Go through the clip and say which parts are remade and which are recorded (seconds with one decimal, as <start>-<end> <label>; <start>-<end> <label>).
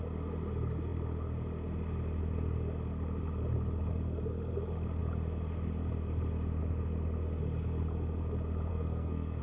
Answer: 0.0-8.7 recorded; 8.7-9.4 remade